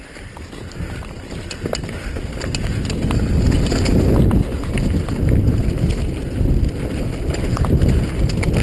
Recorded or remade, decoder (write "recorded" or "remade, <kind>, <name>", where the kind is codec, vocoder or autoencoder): recorded